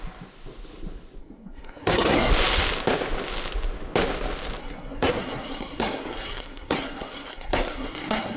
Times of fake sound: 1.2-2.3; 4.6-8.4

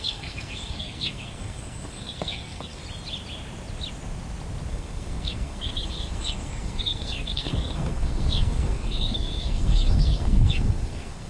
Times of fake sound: 0.0-2.8; 4.7-11.3

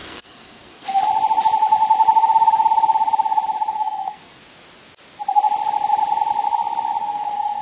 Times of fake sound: 0.0-1.0; 3.7-4.4; 7.0-7.6

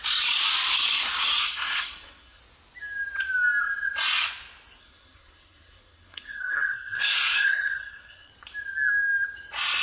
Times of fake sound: 1.4-2.4; 4.8-8.3

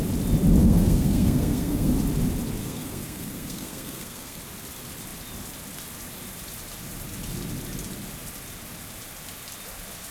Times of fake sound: 0.6-1.9; 2.6-4.4

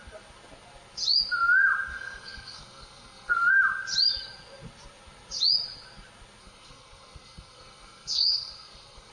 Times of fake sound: 1.9-3.5; 6.4-9.1

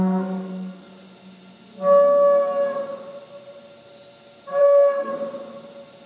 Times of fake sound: 0.0-0.9; 4.6-5.1

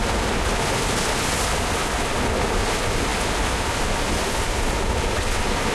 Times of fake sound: none